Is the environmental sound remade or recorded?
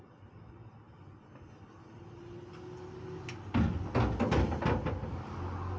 recorded